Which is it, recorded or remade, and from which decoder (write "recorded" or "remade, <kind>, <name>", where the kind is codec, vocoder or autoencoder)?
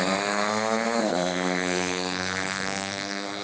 remade, codec, SNAC